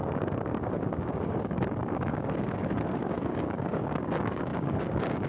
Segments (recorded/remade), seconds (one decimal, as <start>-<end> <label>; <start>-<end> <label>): 0.0-5.3 remade